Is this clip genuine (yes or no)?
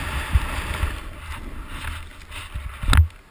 yes